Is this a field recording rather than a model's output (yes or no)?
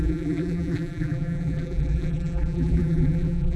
no